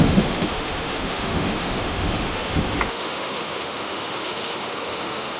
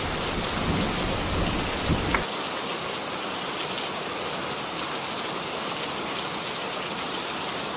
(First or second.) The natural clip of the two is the second